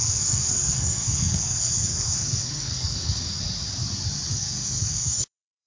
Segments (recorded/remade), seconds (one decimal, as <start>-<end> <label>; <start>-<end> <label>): 0.0-3.4 remade; 3.4-4.3 recorded; 4.3-5.7 remade